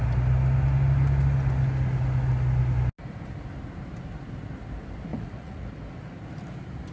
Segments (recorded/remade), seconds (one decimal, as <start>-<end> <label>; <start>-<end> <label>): 0.0-5.1 recorded; 5.1-5.7 remade; 5.7-6.9 recorded